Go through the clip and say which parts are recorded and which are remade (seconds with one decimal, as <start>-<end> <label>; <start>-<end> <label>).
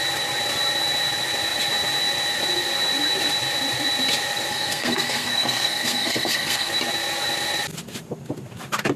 0.0-4.5 recorded; 4.5-6.7 remade; 6.7-9.0 recorded